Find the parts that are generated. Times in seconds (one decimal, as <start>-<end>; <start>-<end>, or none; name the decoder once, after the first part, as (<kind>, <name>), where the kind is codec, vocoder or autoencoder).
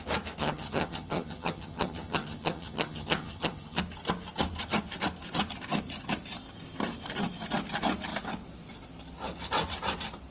0.4-3.8 (vocoder, HiFi-GAN)